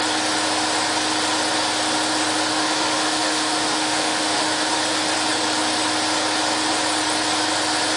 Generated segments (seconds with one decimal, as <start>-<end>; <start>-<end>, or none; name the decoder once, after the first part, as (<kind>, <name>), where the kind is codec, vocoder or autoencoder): 2.5-4.8 (autoencoder, DAC-VAE)